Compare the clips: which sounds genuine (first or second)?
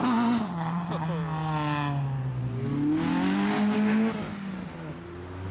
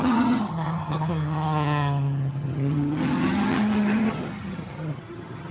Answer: first